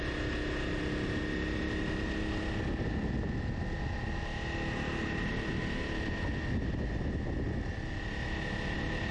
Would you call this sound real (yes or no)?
yes